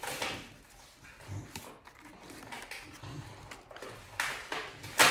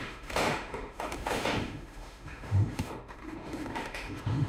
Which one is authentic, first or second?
first